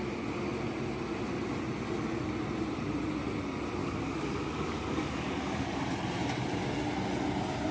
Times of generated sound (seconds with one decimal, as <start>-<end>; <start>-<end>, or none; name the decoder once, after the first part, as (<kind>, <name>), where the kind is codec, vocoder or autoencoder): 3.8-5.8 (codec, DAC)